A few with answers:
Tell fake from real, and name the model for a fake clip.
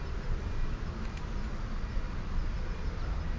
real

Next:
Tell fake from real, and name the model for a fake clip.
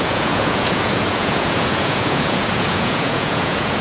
fake, vocoder, Vocos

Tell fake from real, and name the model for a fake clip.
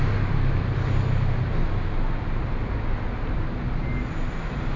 real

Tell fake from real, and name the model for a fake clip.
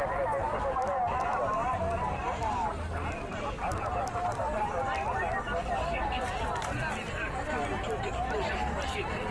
real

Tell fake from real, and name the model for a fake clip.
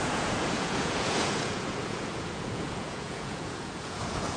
fake, vocoder, Vocos